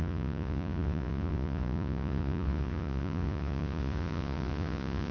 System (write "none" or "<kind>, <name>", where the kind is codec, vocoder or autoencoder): vocoder, Vocos